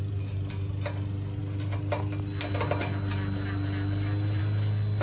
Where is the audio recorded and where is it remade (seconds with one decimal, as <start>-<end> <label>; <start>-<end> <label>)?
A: 0.0-5.0 recorded